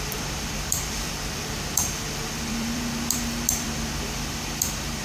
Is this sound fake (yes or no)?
yes